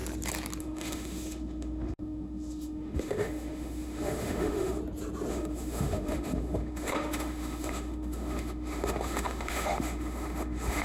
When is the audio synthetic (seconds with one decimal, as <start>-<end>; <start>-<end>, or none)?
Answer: 0.6-4.8; 5.3-10.8